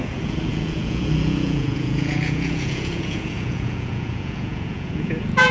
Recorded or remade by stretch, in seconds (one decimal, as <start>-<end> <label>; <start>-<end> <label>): 0.0-5.5 remade